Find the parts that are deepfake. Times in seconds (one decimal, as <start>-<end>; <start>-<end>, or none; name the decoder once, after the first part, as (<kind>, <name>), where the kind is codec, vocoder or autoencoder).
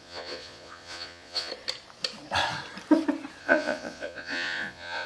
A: 0.0-1.5 (vocoder, Vocos); 3.4-5.1